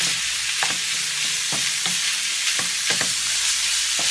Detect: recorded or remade recorded